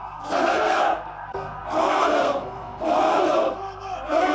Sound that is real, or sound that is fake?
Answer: fake